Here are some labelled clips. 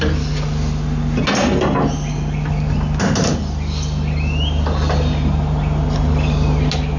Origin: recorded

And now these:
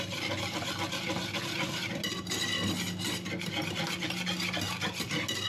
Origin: recorded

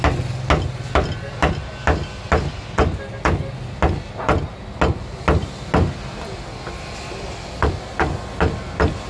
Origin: recorded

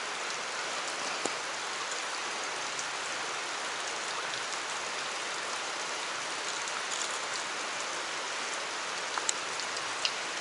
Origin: recorded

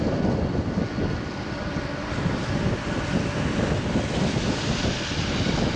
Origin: recorded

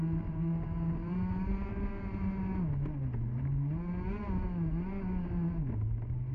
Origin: recorded